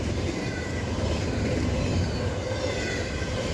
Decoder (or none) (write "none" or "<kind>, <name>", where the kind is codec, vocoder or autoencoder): none